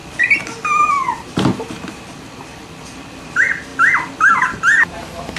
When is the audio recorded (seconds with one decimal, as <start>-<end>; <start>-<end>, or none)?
0.0-3.2; 3.7-4.3